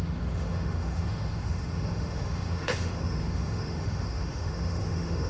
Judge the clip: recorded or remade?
remade